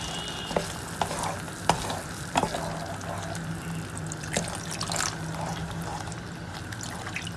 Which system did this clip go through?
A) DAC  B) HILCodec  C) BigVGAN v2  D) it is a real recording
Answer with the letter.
D